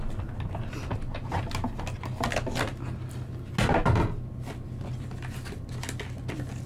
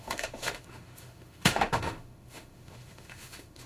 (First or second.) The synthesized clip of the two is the second